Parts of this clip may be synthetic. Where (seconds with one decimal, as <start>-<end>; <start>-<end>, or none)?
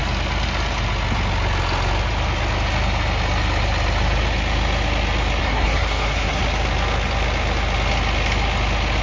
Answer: 5.4-6.4